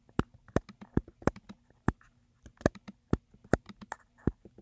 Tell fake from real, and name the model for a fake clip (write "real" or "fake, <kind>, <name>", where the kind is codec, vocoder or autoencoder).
real